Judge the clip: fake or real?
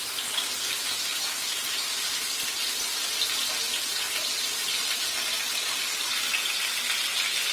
real